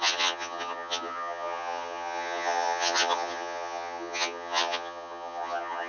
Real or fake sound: fake